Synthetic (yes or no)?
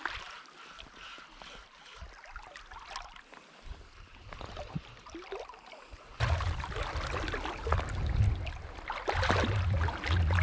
no